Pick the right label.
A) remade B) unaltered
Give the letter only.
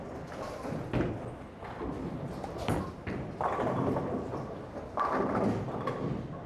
B